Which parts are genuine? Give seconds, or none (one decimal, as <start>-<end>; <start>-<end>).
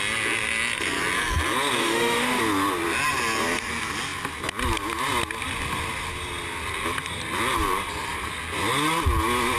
0.0-1.8; 2.4-9.6